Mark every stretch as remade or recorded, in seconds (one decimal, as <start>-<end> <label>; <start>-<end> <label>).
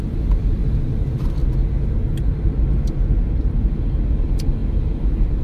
0.0-5.4 recorded